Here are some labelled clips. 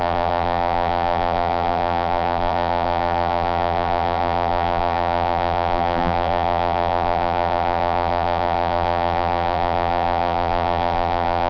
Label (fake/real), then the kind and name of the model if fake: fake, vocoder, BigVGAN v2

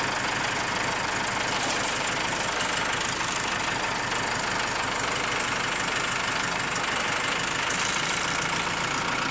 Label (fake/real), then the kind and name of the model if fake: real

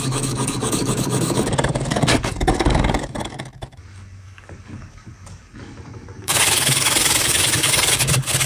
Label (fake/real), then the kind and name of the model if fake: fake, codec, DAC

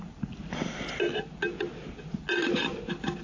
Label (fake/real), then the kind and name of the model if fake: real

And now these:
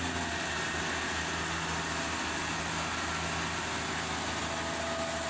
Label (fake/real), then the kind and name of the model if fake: real